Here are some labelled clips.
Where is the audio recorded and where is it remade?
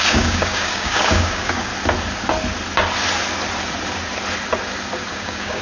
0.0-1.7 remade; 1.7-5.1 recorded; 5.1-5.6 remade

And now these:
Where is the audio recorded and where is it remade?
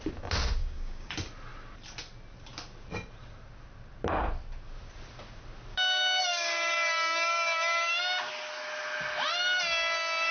0.0-0.6 recorded; 0.6-1.1 remade; 1.1-5.7 recorded; 5.7-8.3 remade; 8.3-10.3 recorded